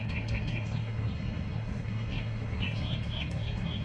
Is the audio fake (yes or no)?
yes